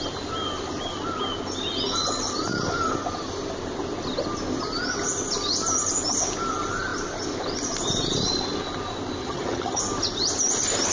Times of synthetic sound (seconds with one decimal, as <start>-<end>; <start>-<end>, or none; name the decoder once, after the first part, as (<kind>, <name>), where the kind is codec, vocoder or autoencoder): 9.2-9.8 (vocoder, HiFi-GAN)